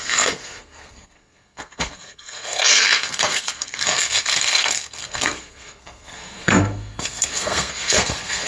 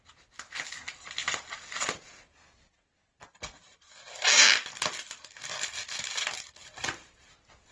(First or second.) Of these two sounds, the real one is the second